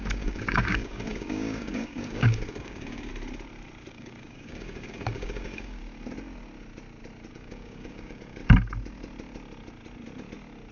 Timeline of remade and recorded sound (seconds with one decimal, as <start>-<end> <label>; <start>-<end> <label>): 0.0-3.1 remade; 3.1-3.9 recorded; 3.9-5.8 remade; 5.8-7.3 recorded; 7.3-8.4 remade; 8.4-10.7 recorded